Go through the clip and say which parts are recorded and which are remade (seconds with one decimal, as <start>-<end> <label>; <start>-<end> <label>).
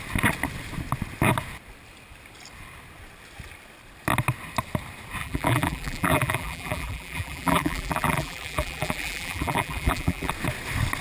0.0-5.2 recorded; 5.2-10.3 remade; 10.3-11.0 recorded